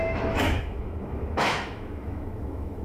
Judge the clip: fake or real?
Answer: fake